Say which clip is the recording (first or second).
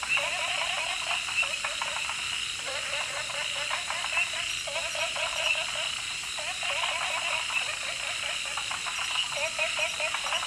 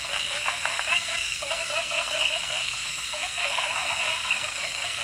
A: first